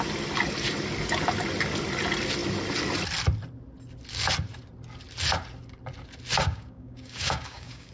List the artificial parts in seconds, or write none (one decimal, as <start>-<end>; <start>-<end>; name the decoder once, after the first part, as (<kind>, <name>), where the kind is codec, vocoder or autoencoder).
6.4-7.9 (codec, DAC)